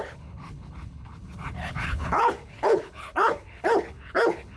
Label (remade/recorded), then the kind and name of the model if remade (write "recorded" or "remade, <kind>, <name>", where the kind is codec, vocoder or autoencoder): remade, codec, HILCodec